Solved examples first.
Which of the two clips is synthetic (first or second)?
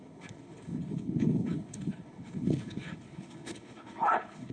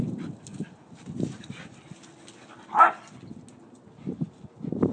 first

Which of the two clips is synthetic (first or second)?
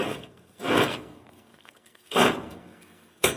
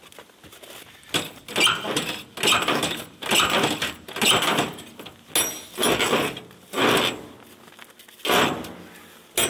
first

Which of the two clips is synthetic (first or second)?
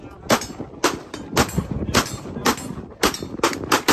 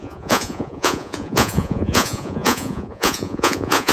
second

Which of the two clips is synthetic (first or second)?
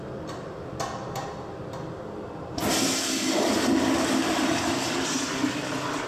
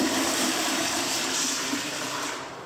second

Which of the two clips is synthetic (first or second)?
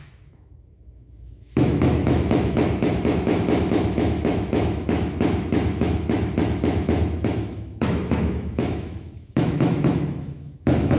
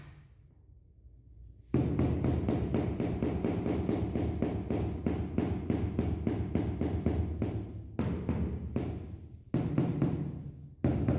first